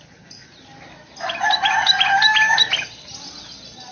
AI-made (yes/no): no